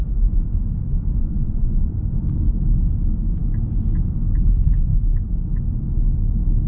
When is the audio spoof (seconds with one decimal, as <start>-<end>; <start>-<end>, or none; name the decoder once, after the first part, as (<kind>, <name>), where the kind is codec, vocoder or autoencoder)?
1.2-1.9 (vocoder, Vocos)